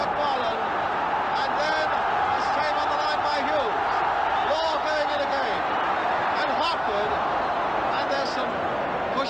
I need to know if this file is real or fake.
real